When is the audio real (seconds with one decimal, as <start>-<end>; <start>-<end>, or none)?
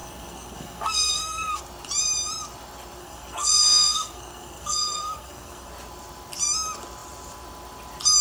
1.6-3.0; 5.7-8.2